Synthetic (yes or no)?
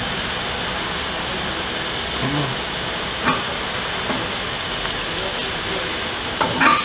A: no